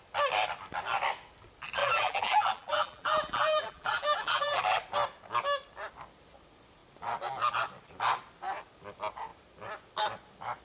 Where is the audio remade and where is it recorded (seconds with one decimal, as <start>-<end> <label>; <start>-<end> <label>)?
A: 0.0-1.8 recorded; 1.8-4.6 remade; 4.6-10.6 recorded